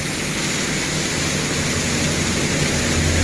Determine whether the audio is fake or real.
real